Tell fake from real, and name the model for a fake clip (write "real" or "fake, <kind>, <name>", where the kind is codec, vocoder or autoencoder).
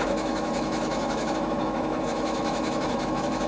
fake, autoencoder, DAC-VAE